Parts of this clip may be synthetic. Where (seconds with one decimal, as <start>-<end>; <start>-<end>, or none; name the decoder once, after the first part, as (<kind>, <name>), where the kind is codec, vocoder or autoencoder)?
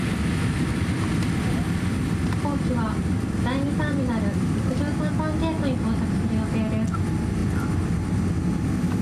none